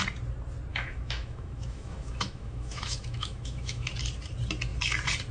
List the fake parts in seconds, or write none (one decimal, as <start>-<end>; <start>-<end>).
0.7-3.9